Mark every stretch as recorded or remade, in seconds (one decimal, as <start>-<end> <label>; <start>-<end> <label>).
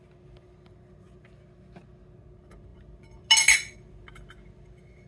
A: 0.0-5.1 recorded